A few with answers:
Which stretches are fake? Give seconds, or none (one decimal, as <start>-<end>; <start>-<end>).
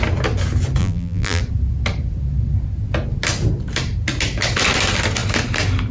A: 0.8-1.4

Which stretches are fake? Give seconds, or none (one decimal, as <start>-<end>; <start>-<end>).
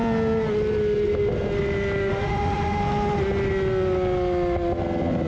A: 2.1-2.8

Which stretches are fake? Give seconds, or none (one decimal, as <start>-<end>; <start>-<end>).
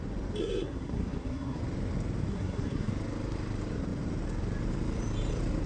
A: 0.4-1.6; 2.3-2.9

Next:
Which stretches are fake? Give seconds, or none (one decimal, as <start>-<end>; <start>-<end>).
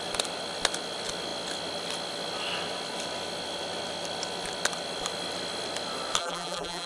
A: 6.2-6.9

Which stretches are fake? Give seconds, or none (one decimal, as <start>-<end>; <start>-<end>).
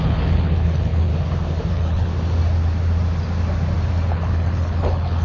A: 0.0-1.1; 1.7-2.1; 4.1-5.2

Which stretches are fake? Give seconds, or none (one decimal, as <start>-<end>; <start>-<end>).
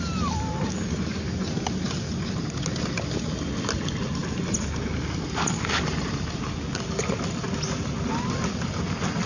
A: none